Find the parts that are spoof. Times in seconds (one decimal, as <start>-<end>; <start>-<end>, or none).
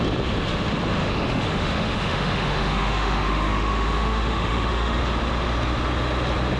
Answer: 1.0-5.0